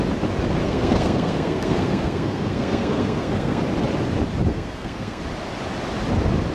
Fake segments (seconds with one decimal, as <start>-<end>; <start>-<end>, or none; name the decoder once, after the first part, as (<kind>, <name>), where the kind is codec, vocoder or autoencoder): 0.6-3.6 (codec, SNAC); 4.5-5.2